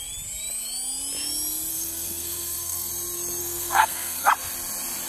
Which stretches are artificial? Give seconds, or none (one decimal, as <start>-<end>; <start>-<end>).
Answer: 1.7-2.9; 3.4-4.3